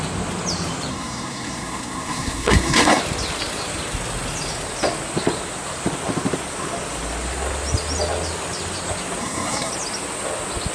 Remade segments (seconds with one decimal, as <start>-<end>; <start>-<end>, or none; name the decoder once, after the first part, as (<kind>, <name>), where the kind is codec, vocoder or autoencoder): 0.9-3.0 (codec, SNAC); 9.2-9.7